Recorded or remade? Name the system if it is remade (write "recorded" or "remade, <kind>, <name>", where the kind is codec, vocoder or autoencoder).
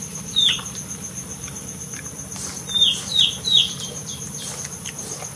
remade, vocoder, BigVGAN v2